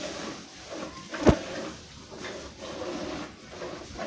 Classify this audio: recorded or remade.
recorded